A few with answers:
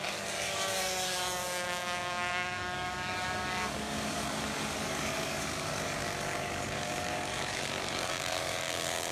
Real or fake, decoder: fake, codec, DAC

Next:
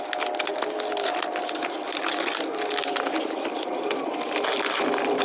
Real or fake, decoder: real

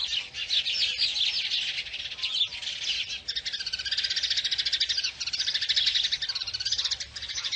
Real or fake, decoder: real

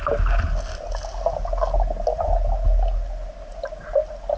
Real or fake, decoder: real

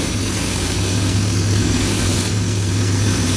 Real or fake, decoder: fake, codec, SNAC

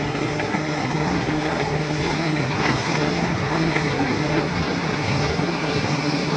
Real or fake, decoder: fake, codec, SNAC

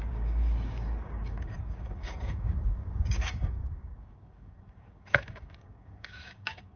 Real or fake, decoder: fake, codec, DAC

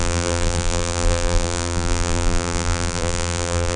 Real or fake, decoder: fake, vocoder, BigVGAN v2